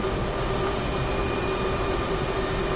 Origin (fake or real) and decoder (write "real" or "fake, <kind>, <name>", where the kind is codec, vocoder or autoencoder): real